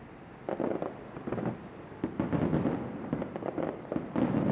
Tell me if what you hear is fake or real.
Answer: real